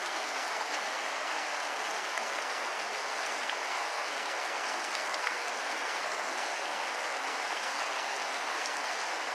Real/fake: fake